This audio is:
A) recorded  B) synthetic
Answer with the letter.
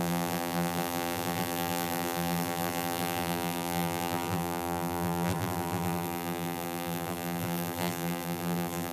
B